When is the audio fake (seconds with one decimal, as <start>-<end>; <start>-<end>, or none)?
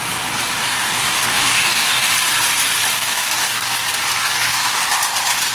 0.6-2.1; 2.9-3.8; 4.2-4.8